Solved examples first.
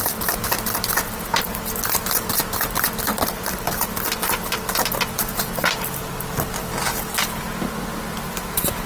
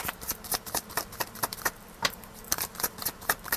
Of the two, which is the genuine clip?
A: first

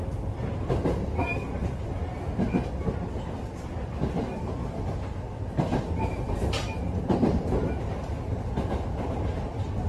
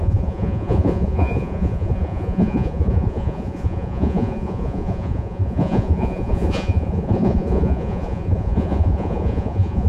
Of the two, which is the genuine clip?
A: first